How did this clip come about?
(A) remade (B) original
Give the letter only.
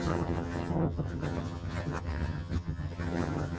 A